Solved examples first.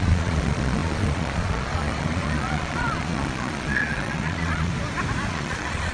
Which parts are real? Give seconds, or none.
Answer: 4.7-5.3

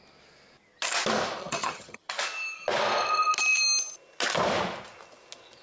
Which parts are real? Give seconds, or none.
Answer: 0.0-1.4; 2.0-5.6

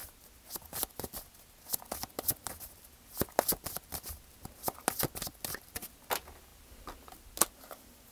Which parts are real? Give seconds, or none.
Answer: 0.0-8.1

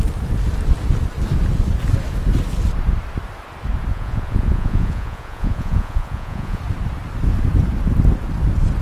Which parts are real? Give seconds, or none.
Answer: 0.0-3.9; 6.6-8.8

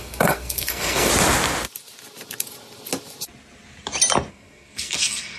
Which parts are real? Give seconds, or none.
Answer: 1.1-4.3

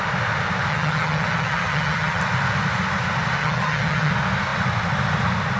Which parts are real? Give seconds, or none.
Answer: 0.0-0.7; 2.2-3.4; 4.1-5.6

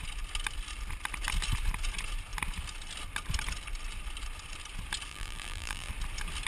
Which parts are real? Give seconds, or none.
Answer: 0.0-5.1; 5.9-6.5